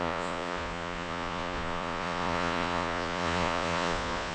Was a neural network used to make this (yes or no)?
yes